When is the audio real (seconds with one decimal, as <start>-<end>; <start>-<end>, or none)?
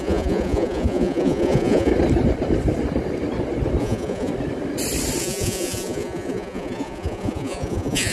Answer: 1.9-3.8; 4.3-5.2